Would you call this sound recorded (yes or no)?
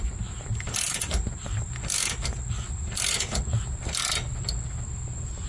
yes